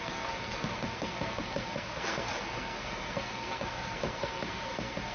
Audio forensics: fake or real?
fake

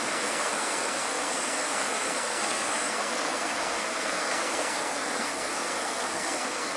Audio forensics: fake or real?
fake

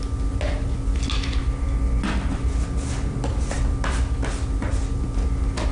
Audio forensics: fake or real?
real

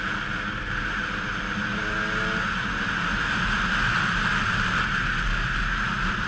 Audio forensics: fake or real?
real